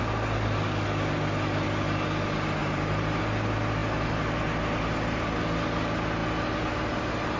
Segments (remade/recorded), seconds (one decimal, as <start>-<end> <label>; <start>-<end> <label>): 0.0-2.6 recorded; 2.6-3.2 remade; 3.2-7.4 recorded